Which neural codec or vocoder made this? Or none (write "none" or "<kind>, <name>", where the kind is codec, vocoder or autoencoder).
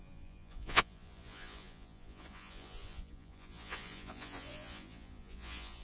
vocoder, Vocos